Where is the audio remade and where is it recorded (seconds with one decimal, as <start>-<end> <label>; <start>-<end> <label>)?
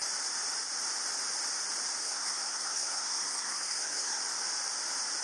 0.0-2.0 recorded; 2.0-4.2 remade; 4.2-5.2 recorded